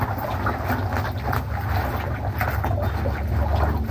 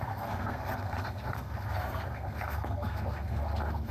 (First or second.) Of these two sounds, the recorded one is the first